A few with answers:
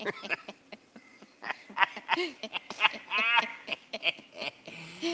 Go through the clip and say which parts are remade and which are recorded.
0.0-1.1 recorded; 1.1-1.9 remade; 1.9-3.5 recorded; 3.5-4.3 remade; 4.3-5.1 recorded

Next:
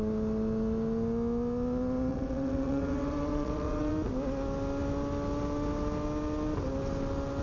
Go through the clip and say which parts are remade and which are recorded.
0.0-2.1 recorded; 2.1-3.9 remade; 3.9-7.4 recorded

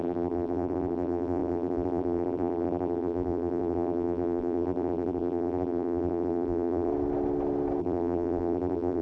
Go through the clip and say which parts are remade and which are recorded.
0.0-6.9 remade; 6.9-7.8 recorded; 7.8-9.0 remade

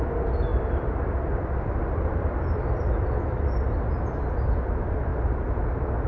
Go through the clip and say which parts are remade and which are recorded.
0.0-6.1 recorded

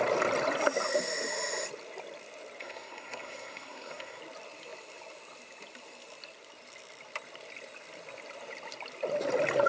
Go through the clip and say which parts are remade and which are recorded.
0.0-2.6 recorded; 2.6-4.2 remade; 4.2-9.7 recorded

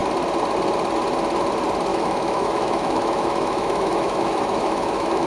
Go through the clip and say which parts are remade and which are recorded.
0.0-1.9 recorded; 1.9-5.3 remade